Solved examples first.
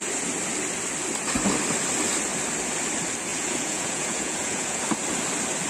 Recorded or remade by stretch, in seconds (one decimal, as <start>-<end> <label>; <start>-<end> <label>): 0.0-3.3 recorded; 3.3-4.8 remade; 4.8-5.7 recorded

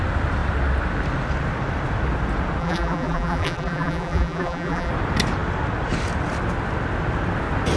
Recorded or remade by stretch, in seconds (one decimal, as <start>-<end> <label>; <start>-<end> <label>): 0.0-2.6 recorded; 2.6-4.9 remade; 4.9-7.8 recorded

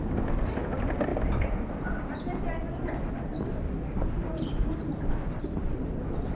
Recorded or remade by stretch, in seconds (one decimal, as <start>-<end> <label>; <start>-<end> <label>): 0.0-4.2 recorded; 4.2-5.1 remade; 5.1-6.3 recorded